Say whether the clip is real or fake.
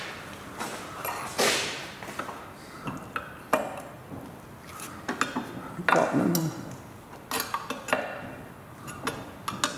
real